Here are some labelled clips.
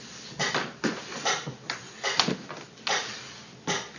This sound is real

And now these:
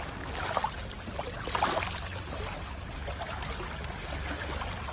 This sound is real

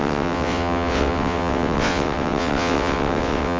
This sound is fake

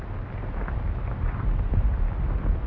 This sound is real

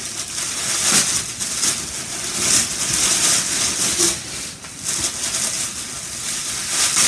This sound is real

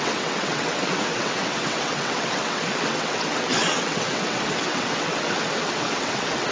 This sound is fake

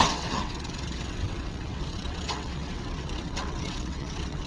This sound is fake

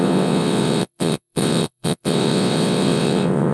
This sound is fake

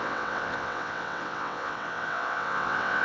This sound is fake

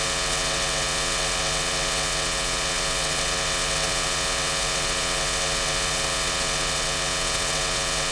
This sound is fake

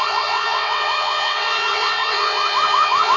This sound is fake